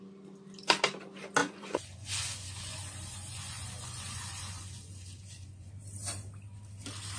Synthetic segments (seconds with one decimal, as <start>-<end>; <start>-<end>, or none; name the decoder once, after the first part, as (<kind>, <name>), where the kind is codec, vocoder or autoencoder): 1.4-5.7 (vocoder, Vocos)